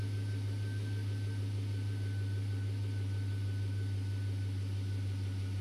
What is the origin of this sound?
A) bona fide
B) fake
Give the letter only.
A